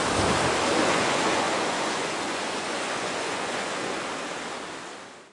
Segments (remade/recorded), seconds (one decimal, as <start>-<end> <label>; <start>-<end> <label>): 0.0-0.8 recorded; 0.8-4.0 remade; 4.0-5.3 recorded